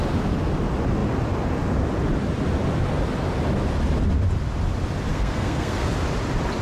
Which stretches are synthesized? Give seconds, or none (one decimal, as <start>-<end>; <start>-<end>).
5.1-5.9